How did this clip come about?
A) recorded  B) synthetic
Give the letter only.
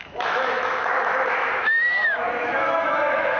B